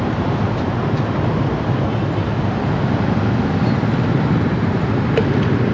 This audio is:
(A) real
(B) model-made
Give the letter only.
A